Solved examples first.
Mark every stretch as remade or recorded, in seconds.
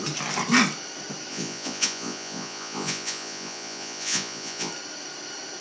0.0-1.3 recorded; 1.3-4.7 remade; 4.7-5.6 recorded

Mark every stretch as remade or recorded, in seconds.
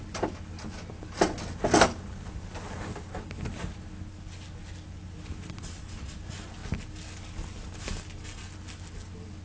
0.0-9.4 recorded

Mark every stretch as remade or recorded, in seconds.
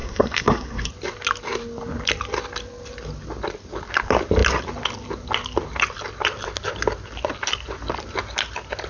0.0-0.9 remade; 0.9-8.9 recorded